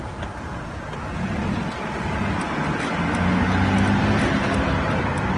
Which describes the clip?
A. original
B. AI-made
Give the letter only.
A